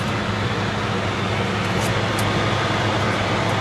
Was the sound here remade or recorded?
recorded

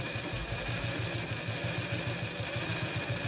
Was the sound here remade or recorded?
recorded